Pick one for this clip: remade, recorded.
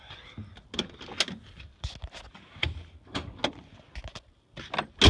recorded